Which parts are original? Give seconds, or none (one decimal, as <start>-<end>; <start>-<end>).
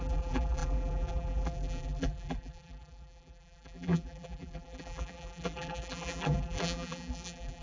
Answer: none